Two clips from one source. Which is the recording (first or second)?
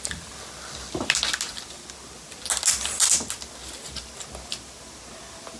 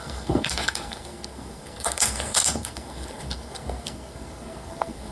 first